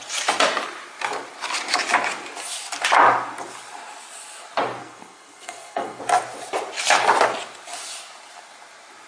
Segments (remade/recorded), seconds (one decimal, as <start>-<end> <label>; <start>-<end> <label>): 0.0-4.8 recorded; 4.8-6.0 remade; 6.0-9.1 recorded